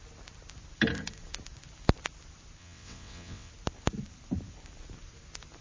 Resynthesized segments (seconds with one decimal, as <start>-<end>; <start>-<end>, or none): 2.6-3.5